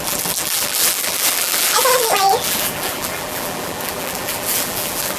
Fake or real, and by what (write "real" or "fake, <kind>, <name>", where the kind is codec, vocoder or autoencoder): fake, vocoder, BigVGAN v2